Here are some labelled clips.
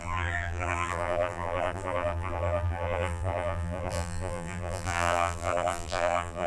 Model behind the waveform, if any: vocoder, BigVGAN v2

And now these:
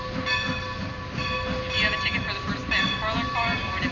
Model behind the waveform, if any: none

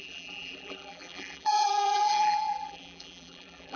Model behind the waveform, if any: vocoder, BigVGAN v2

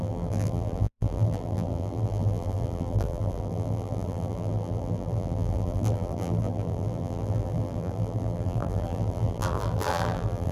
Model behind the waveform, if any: vocoder, BigVGAN v2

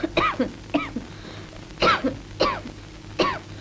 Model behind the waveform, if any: none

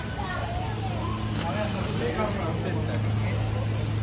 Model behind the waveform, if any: none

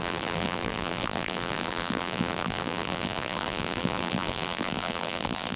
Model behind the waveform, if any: vocoder, BigVGAN v2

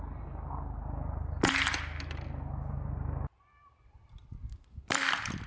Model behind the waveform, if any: vocoder, BigVGAN v2